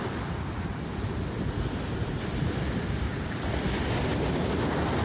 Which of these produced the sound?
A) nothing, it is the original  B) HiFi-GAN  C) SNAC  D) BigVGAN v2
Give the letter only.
A